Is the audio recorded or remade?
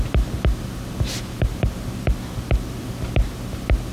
recorded